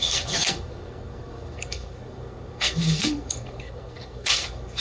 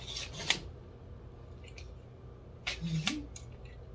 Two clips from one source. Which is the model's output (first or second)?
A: first